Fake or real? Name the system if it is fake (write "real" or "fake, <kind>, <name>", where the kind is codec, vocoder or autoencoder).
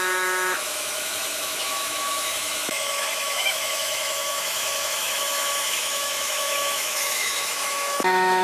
fake, autoencoder, DAC-VAE